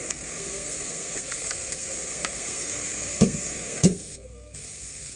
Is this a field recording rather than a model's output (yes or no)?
no